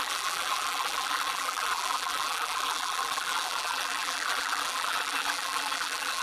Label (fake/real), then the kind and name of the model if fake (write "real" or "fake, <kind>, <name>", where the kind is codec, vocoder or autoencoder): fake, vocoder, BigVGAN v2